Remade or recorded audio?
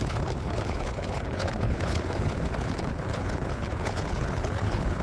remade